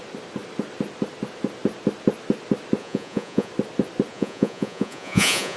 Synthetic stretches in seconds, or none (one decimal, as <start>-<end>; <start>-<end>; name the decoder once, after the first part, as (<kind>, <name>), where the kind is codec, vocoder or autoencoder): 2.8-3.5 (vocoder, Vocos); 4.1-5.6